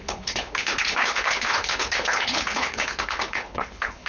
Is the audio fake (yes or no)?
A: yes